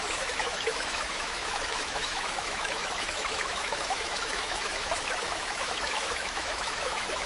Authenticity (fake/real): fake